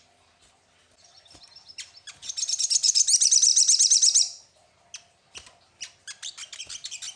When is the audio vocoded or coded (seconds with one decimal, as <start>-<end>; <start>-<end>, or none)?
none